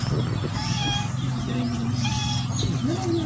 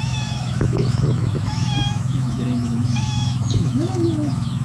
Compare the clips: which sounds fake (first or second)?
second